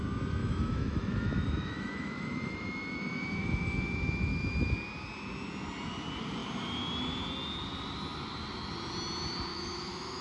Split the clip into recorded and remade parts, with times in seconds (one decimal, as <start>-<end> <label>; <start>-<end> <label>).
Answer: 0.0-0.4 recorded; 0.4-4.7 remade; 4.7-9.5 recorded; 9.5-10.2 remade